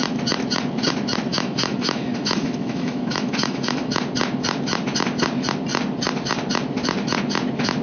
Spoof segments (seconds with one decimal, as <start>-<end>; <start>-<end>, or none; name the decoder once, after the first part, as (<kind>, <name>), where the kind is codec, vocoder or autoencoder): 1.3-3.9 (autoencoder, DAC-VAE)